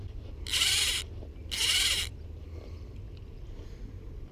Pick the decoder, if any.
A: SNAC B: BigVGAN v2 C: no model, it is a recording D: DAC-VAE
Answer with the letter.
C